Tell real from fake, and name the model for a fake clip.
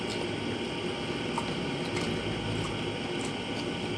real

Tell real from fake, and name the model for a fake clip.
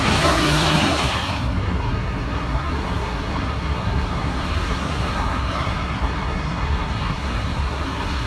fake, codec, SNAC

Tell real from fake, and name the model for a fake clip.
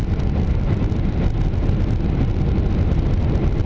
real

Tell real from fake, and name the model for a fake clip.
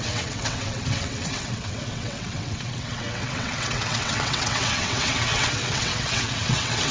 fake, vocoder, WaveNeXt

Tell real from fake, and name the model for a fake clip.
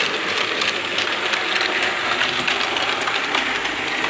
real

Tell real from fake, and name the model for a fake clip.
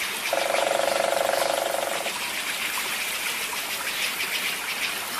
real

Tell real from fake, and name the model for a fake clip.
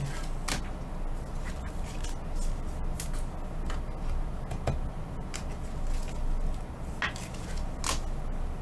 real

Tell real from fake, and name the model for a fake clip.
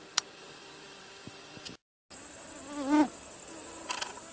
real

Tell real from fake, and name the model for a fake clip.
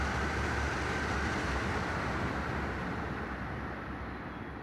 real